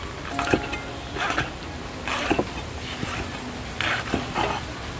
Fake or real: real